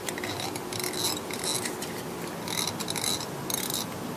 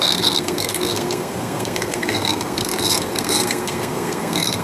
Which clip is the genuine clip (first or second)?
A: first